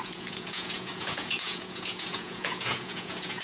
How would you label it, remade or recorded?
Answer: remade